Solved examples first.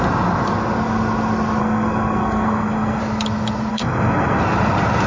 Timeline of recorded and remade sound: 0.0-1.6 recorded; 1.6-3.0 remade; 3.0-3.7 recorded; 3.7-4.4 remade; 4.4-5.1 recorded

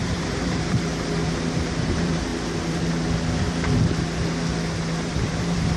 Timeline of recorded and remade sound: 0.0-0.9 remade; 0.9-1.8 recorded; 1.8-2.3 remade; 2.3-5.1 recorded; 5.1-5.8 remade

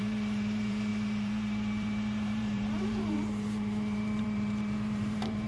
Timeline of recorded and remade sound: 0.0-5.5 remade

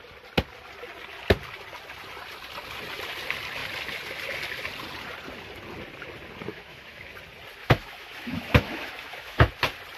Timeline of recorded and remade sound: 0.0-6.5 recorded; 6.5-7.1 remade; 7.1-7.6 recorded; 7.6-9.5 remade; 9.5-10.0 recorded

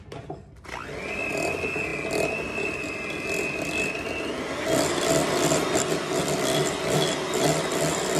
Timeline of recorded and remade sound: 0.0-8.2 recorded

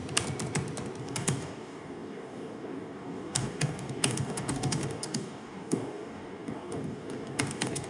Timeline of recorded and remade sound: 0.0-1.0 recorded; 1.0-7.9 remade

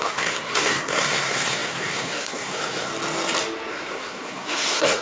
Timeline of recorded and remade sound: 0.0-2.9 remade; 2.9-3.7 recorded; 3.7-5.0 remade